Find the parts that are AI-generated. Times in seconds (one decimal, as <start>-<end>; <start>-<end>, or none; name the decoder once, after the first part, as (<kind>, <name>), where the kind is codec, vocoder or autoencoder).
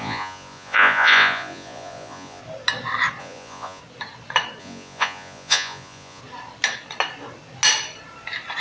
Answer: 0.0-2.4 (vocoder, Vocos); 3.2-3.8; 4.6-6.2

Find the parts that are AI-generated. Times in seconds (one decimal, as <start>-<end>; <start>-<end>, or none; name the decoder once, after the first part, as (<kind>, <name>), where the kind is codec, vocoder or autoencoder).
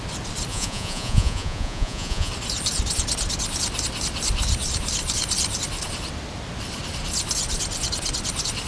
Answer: 0.5-2.3 (vocoder, Vocos)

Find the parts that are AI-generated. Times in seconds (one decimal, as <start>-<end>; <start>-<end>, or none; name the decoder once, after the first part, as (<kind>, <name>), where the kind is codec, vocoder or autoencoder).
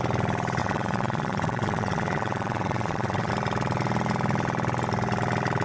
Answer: 0.6-3.3 (vocoder, Vocos)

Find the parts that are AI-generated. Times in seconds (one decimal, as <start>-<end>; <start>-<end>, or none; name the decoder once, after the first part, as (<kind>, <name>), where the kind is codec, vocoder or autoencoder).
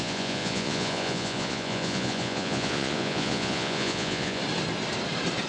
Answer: 0.0-4.4 (vocoder, Vocos)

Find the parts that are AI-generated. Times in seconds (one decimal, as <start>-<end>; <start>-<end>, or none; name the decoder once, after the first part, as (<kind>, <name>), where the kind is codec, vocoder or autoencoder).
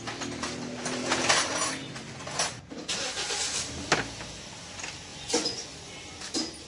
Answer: 5.1-5.9 (vocoder, Vocos)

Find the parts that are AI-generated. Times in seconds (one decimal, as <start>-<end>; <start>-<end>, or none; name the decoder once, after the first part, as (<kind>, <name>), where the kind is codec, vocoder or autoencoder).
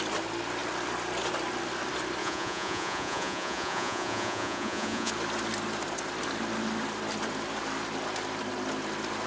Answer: 2.2-5.1 (vocoder, Vocos)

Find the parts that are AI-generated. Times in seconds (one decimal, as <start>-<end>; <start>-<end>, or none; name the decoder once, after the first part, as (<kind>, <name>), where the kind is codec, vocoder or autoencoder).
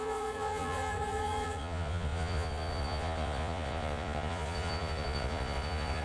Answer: 0.0-6.0 (vocoder, Vocos)